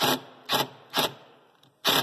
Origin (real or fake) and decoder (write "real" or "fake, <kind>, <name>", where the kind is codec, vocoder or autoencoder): real